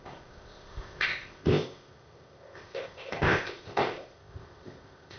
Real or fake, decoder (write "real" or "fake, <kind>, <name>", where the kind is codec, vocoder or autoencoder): fake, codec, ZipCodec